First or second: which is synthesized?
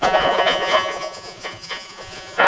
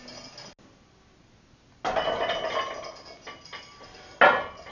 first